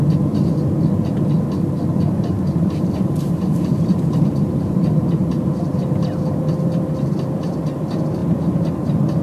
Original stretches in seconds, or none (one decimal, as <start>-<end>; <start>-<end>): 0.0-1.9; 6.4-8.2; 8.7-9.2